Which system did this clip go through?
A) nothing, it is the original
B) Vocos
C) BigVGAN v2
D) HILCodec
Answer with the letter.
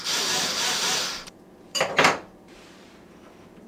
C